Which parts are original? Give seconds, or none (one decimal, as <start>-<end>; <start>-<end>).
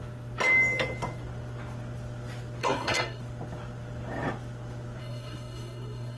0.0-2.6; 3.2-5.0